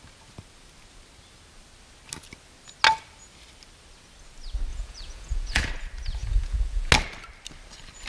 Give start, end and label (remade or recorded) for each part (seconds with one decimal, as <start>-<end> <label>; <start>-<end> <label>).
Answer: 0.0-4.7 recorded; 4.7-5.7 remade; 5.7-6.2 recorded; 6.2-6.9 remade; 6.9-8.1 recorded